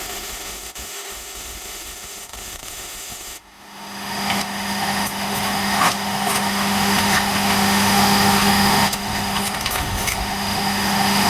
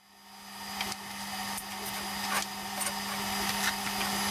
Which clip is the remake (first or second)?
first